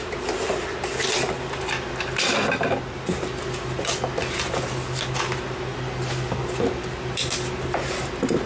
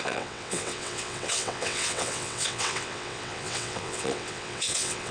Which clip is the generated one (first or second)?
second